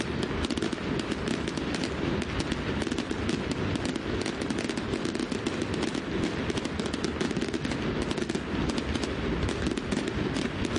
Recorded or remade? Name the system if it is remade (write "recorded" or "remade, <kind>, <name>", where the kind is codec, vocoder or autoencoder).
recorded